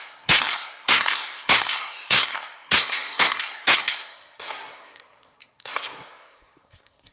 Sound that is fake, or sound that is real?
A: fake